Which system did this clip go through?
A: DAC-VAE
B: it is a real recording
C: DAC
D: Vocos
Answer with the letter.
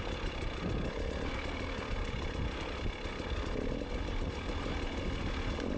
B